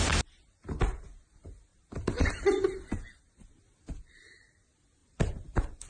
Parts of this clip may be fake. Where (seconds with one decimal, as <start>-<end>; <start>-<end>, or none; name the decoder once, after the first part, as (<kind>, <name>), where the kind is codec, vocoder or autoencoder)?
1.7-2.3 (vocoder, BigVGAN v2); 5.0-5.9